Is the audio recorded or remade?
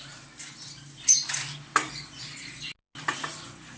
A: recorded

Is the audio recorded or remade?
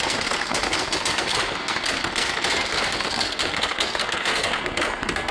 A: remade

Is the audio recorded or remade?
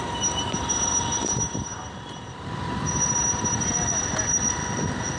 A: recorded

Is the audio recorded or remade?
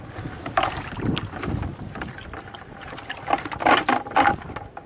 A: recorded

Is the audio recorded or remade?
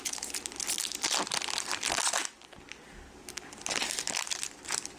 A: recorded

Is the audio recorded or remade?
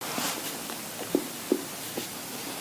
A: recorded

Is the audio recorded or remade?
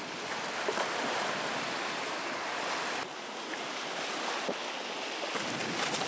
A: recorded